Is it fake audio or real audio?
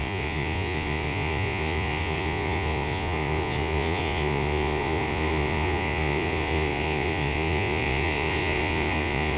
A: fake